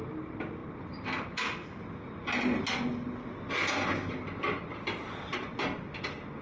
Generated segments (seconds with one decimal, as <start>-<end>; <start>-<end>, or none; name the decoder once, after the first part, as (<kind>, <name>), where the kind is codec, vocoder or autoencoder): none